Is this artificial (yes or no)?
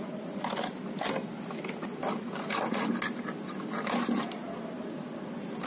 no